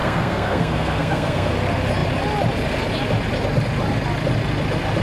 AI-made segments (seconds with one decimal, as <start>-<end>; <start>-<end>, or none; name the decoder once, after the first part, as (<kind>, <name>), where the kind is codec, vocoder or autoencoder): 0.0-1.5 (codec, SNAC)